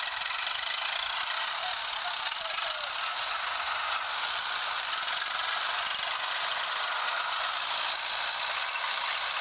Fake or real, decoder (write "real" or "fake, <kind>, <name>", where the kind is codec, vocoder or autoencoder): real